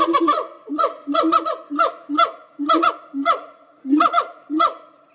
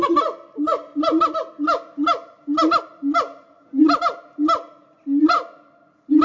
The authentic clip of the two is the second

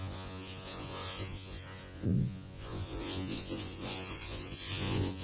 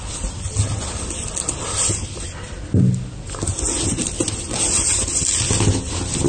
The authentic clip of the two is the second